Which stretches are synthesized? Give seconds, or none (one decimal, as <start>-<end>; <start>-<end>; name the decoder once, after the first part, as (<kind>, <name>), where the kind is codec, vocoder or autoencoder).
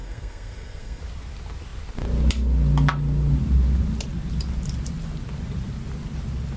0.0-1.0 (codec, SNAC)